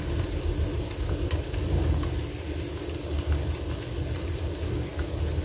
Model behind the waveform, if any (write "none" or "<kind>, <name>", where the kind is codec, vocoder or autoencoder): none